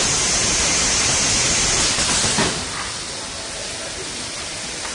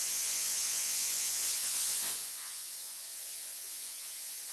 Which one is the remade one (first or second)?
second